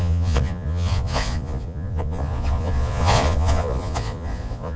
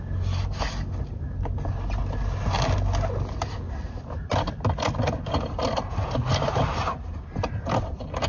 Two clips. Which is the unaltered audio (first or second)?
second